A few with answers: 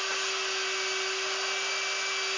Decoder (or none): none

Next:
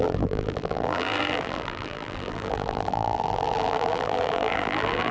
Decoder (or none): vocoder, BigVGAN v2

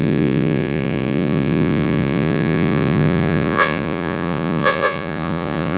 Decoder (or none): vocoder, Vocos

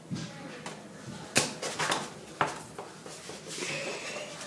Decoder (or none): none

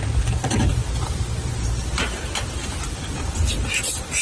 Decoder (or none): vocoder, BigVGAN v2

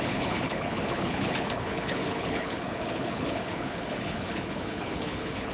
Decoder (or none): codec, HILCodec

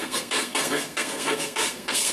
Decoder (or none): codec, SNAC